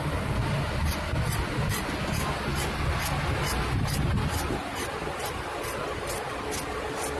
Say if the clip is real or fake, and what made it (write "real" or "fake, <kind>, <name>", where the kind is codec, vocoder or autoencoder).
real